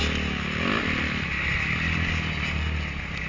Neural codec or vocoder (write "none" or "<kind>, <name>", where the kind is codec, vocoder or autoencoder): none